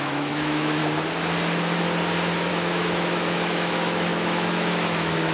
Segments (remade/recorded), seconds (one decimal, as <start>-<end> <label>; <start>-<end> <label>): 0.0-0.8 remade; 0.8-2.5 recorded; 2.5-5.3 remade